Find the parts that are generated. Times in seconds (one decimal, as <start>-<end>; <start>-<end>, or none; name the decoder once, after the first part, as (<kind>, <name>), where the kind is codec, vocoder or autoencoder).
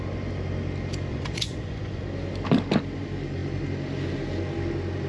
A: 1.1-2.0 (vocoder, Vocos)